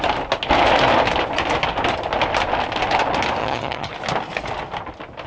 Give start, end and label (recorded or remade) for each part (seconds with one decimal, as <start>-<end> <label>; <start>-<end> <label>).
0.0-3.4 recorded; 3.4-3.9 remade; 3.9-5.3 recorded